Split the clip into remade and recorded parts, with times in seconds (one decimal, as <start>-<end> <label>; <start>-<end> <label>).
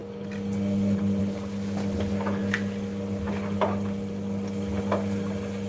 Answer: 0.0-5.7 recorded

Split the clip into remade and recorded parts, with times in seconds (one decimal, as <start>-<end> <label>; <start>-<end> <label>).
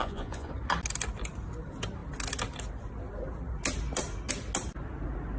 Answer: 0.0-0.5 remade; 0.5-5.4 recorded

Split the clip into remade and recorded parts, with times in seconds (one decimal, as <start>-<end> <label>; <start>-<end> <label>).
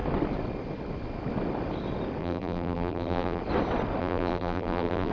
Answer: 0.0-2.2 recorded; 2.2-3.4 remade; 3.4-4.0 recorded; 4.0-5.1 remade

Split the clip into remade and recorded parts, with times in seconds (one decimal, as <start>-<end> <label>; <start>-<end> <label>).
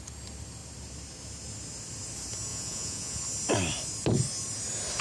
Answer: 0.0-2.5 recorded; 2.5-3.2 remade; 3.2-5.0 recorded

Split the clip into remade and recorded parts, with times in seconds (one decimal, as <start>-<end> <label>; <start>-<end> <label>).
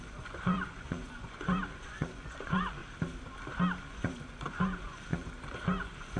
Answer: 0.0-2.8 remade; 2.8-3.9 recorded; 3.9-6.2 remade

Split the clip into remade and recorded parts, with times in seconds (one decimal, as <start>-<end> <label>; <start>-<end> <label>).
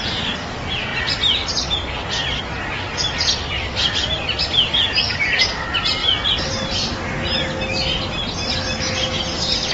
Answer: 0.0-6.0 recorded; 6.0-6.7 remade; 6.7-9.7 recorded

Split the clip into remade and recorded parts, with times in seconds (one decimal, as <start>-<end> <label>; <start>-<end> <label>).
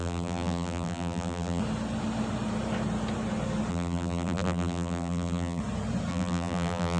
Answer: 0.0-1.6 remade; 1.6-3.7 recorded; 3.7-5.6 remade; 5.6-6.1 recorded; 6.1-7.0 remade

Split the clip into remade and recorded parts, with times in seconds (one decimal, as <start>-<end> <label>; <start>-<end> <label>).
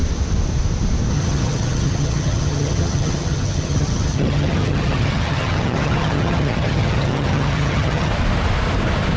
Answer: 0.0-1.1 recorded; 1.1-8.1 remade; 8.1-9.2 recorded